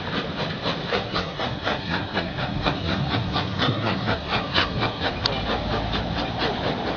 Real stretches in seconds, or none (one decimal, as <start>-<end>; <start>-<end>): 0.0-0.9; 5.1-7.0